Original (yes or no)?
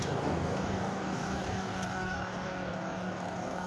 no